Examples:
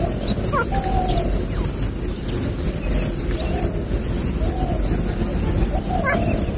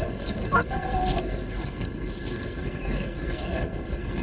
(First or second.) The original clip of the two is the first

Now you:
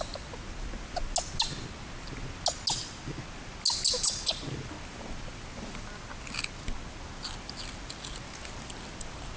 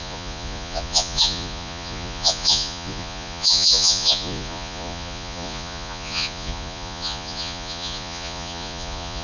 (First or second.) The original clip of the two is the first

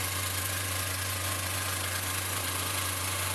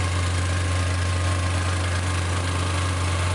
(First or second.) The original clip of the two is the second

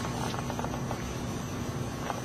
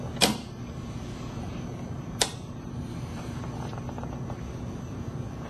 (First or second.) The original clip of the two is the first